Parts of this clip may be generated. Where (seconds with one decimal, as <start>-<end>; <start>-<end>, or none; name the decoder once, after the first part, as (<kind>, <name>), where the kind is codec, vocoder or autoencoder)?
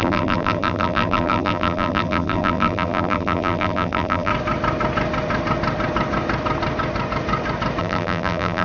0.0-4.3 (vocoder, BigVGAN v2); 7.8-8.6